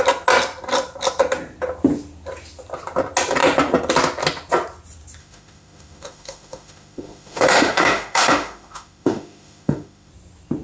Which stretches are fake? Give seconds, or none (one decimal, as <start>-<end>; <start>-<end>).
5.2-10.1